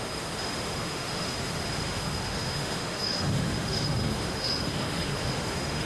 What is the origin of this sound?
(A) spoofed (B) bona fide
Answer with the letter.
A